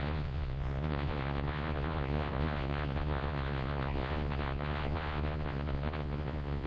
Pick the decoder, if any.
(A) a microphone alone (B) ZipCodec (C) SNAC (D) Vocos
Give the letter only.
D